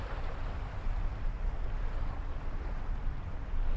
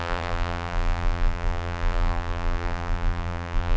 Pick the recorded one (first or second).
first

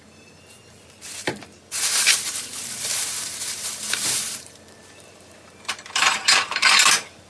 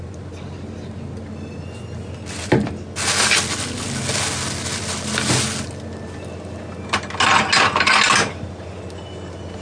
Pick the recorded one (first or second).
second